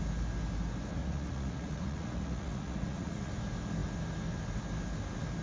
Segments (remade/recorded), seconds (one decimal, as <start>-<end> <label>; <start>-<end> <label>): 0.0-1.0 recorded; 1.0-3.3 remade; 3.3-5.4 recorded